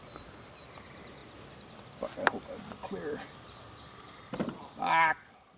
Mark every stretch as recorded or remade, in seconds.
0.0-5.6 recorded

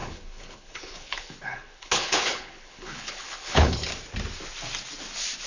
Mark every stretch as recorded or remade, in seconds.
0.0-3.9 remade; 3.9-5.5 recorded

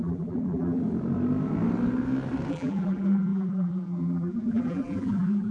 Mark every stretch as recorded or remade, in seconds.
0.0-0.8 remade; 0.8-2.5 recorded; 2.5-5.5 remade

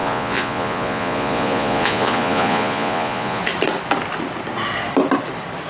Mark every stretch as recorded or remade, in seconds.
0.0-3.4 remade; 3.4-5.7 recorded

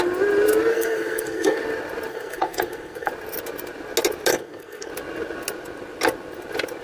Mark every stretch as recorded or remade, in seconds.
0.0-0.7 recorded; 0.7-1.6 remade; 1.6-2.1 recorded; 2.1-3.1 remade; 3.1-4.3 recorded; 4.3-4.9 remade; 4.9-6.8 recorded

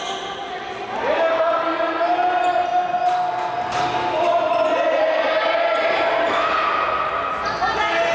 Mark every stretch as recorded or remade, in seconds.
0.0-8.1 recorded

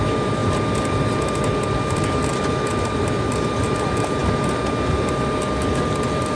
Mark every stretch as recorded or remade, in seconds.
0.0-6.3 recorded

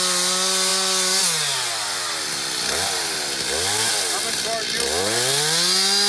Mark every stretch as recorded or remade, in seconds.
0.0-6.1 recorded